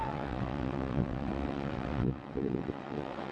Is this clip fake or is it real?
fake